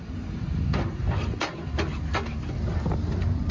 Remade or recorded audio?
recorded